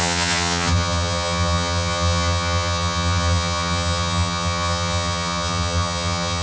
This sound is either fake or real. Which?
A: fake